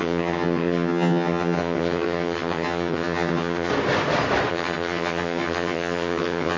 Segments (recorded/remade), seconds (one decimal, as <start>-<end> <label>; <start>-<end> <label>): 0.0-3.7 remade; 3.7-4.5 recorded; 4.5-6.6 remade